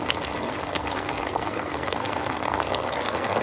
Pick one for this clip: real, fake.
fake